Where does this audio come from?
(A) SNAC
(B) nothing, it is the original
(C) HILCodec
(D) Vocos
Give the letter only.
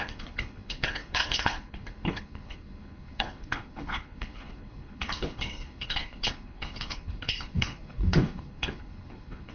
C